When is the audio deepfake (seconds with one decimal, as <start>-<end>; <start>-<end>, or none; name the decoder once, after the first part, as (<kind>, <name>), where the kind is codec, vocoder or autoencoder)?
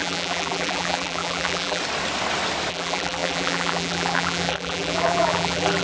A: 0.0-1.8 (vocoder, BigVGAN v2); 2.7-5.8